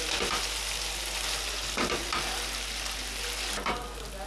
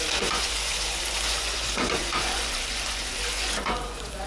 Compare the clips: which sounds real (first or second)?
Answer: first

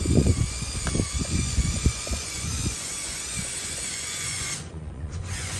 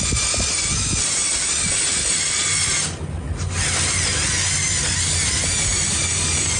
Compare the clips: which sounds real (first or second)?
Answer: second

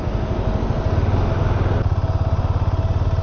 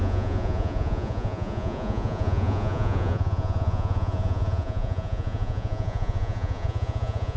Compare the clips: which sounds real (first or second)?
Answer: first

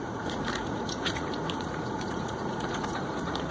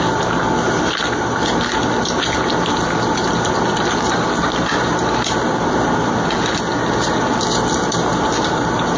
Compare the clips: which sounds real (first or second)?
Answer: second